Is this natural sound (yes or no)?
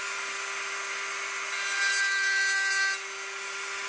yes